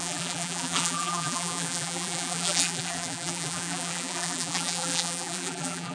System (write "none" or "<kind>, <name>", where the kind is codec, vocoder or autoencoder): vocoder, BigVGAN v2